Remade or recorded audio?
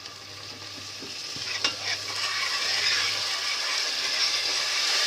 recorded